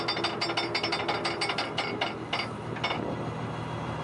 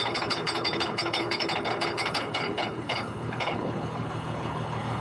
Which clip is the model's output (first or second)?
second